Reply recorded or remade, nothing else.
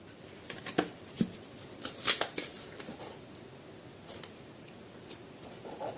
recorded